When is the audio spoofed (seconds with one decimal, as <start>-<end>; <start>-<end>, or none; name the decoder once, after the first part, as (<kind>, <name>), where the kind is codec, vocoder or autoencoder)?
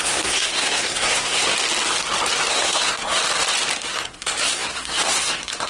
0.0-1.5 (codec, SNAC); 2.5-3.2; 3.9-5.7